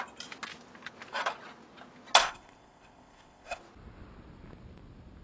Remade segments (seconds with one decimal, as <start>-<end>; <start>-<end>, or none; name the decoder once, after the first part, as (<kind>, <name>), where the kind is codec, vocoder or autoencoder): 2.2-3.6 (codec, ZipCodec)